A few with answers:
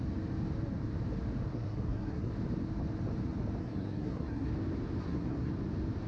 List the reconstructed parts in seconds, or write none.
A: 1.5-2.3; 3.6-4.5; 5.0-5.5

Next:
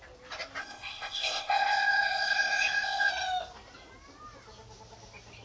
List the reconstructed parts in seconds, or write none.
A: 0.6-3.1

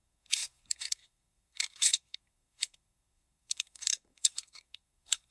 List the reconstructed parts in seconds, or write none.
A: 0.0-5.3

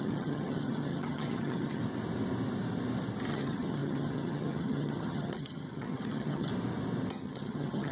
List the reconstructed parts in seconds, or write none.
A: 0.0-1.8; 3.3-6.5; 7.1-7.9

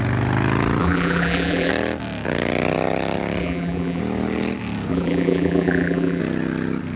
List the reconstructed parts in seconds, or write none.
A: 0.8-1.7; 3.4-4.0; 4.9-6.2

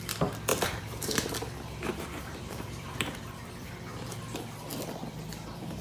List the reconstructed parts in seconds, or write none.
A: 0.5-1.3; 1.9-3.2